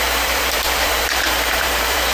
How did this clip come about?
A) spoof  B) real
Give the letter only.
A